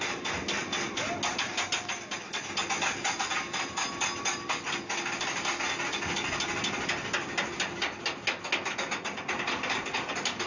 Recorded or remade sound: recorded